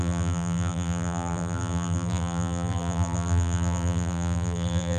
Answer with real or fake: fake